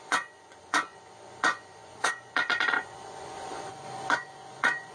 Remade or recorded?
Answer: remade